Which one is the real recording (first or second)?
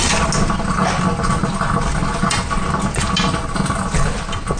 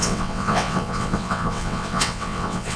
first